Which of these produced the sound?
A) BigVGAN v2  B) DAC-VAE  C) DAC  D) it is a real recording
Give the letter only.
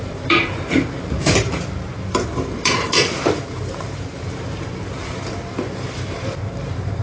A